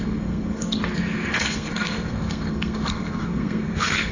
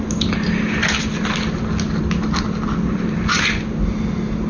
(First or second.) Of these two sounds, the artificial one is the first